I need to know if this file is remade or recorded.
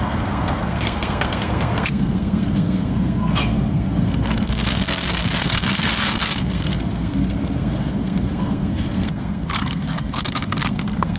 remade